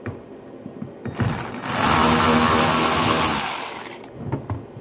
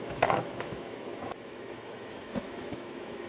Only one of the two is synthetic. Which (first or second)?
second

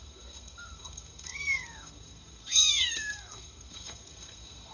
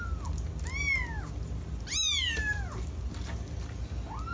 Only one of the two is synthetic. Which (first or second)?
first